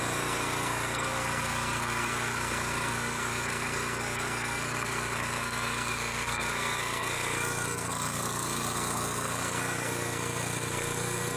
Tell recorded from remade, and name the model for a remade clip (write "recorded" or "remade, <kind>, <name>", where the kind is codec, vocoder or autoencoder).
remade, codec, SNAC